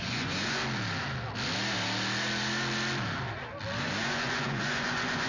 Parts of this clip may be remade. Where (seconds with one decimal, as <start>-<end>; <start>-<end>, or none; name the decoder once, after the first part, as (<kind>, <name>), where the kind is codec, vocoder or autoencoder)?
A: 0.0-0.6 (vocoder, Vocos); 3.8-5.3